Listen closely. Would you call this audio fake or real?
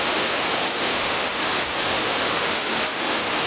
fake